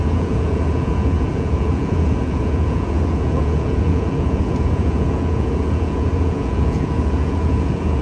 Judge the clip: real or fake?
fake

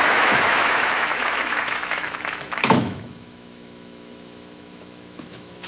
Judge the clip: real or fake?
fake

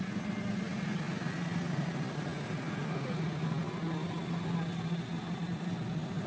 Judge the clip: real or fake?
real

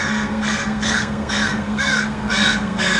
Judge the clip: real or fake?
fake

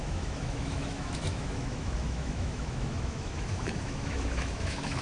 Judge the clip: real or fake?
fake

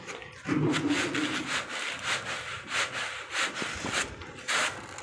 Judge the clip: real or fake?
real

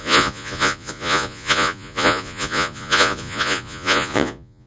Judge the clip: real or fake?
fake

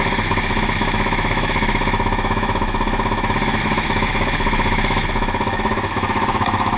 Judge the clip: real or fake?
fake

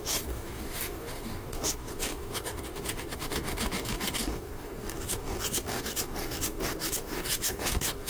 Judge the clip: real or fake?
fake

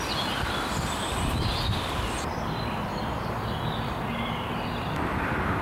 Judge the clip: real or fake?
fake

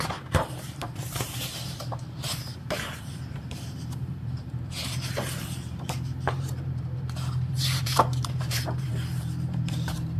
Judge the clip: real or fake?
fake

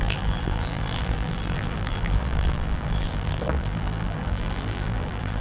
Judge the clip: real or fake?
fake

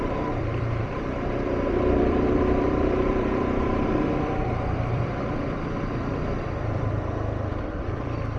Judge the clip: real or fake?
fake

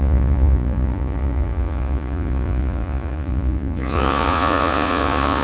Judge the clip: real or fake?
fake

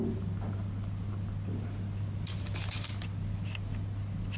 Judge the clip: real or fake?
real